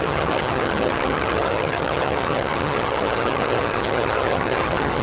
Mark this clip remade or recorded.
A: remade